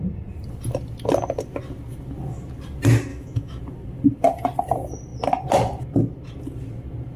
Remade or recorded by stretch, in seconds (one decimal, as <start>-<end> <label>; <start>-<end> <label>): 0.0-3.1 recorded; 3.1-3.6 remade; 3.6-7.2 recorded